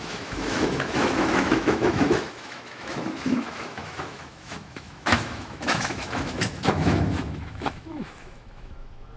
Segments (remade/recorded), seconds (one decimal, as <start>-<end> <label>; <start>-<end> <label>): 0.0-9.2 remade